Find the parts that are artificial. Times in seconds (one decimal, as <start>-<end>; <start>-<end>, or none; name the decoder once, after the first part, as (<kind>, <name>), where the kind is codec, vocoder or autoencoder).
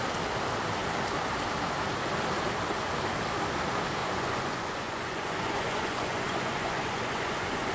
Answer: 4.0-7.7 (vocoder, Vocos)